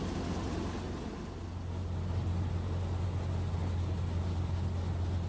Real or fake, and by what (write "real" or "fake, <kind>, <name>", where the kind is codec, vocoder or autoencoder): real